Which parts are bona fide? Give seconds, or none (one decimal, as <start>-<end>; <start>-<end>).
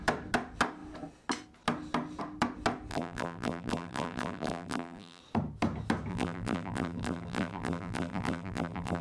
0.0-2.9; 5.2-6.1